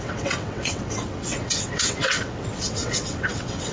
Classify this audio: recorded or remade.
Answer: remade